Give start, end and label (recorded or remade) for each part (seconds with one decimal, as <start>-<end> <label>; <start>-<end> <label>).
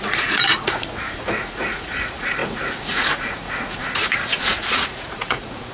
0.0-5.7 remade